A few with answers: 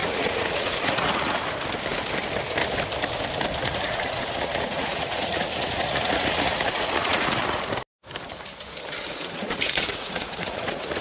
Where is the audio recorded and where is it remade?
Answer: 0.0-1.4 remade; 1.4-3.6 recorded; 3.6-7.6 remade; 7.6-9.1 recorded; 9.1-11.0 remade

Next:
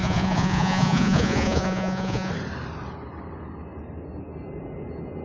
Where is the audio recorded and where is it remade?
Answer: 0.0-2.3 remade; 2.3-5.2 recorded

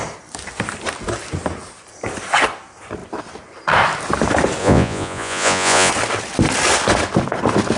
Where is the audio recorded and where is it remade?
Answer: 0.0-4.6 recorded; 4.6-5.9 remade; 5.9-7.8 recorded

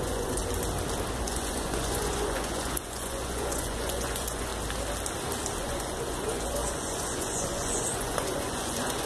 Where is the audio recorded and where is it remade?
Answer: 0.0-0.4 remade; 0.4-1.2 recorded; 1.2-4.5 remade; 4.5-5.6 recorded; 5.6-9.1 remade

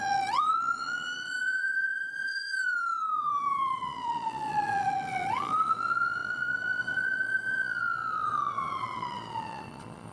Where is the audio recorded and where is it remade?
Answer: 0.0-10.1 remade

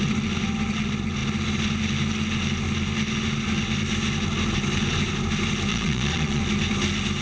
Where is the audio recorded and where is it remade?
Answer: 0.0-5.7 recorded; 5.7-6.4 remade; 6.4-7.2 recorded